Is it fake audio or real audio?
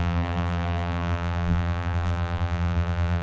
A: fake